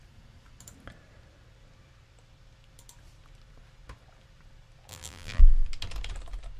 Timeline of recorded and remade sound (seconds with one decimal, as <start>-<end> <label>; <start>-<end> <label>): 0.0-4.9 recorded; 4.9-5.4 remade; 5.4-6.6 recorded